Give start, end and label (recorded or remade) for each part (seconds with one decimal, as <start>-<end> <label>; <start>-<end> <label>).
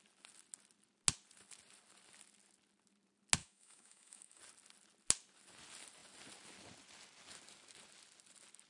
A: 0.0-3.4 recorded; 3.4-4.4 remade; 4.4-8.7 recorded